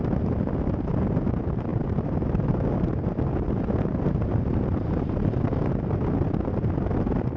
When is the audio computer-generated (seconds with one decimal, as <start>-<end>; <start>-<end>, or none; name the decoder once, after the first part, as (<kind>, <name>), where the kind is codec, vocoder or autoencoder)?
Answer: 1.7-5.8 (vocoder, BigVGAN v2)